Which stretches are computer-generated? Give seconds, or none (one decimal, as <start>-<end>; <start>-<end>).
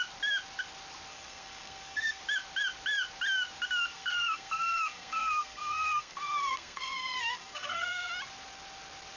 1.1-2.2; 3.9-8.1